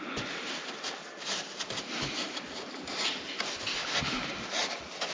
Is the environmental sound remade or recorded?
recorded